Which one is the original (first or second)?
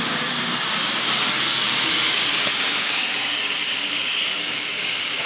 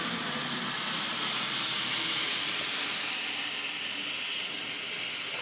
second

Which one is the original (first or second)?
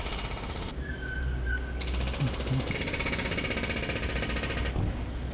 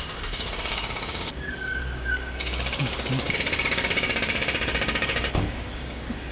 first